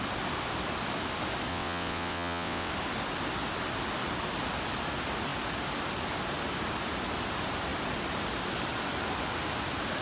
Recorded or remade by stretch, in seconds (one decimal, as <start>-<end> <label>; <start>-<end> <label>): 0.0-1.5 recorded; 1.5-2.7 remade; 2.7-10.0 recorded

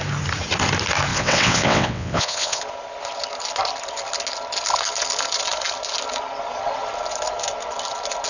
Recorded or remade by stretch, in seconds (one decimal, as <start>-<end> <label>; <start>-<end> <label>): 0.0-1.1 recorded; 1.1-2.6 remade; 2.6-8.3 recorded

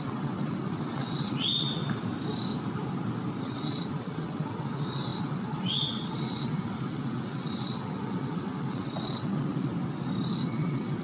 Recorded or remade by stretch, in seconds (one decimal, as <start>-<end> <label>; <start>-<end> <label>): 0.0-1.8 remade; 1.8-3.4 recorded; 3.4-9.7 remade; 9.7-10.4 recorded; 10.4-11.0 remade

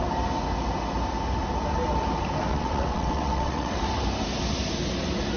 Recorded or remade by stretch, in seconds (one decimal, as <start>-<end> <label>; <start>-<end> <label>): 0.0-2.5 recorded; 2.5-3.8 remade; 3.8-5.4 recorded

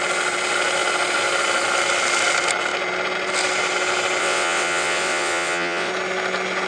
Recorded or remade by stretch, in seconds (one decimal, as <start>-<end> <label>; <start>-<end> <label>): 0.0-4.2 recorded; 4.2-5.9 remade; 5.9-6.7 recorded

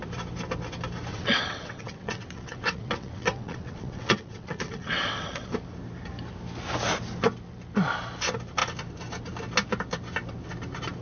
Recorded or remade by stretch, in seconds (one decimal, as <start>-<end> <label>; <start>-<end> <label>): 0.0-1.1 recorded; 1.1-5.5 remade; 5.5-11.0 recorded

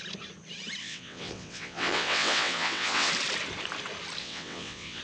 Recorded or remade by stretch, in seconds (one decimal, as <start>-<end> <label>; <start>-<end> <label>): 0.0-0.8 recorded; 0.8-3.1 remade; 3.1-4.2 recorded; 4.2-5.0 remade